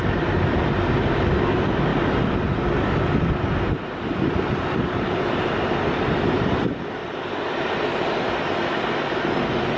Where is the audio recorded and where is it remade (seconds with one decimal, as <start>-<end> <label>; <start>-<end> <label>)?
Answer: 0.0-1.9 recorded; 1.9-3.1 remade; 3.1-7.0 recorded; 7.0-9.0 remade; 9.0-9.8 recorded